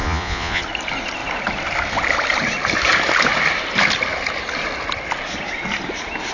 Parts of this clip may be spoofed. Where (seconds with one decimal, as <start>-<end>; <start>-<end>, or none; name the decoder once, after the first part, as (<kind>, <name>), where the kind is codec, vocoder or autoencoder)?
0.0-0.6 (vocoder, Vocos)